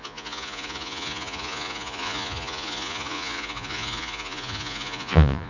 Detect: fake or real fake